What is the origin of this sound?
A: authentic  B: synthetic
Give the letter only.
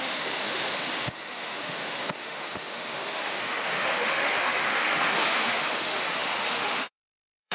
B